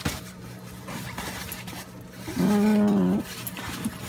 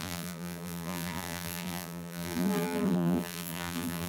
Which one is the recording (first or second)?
first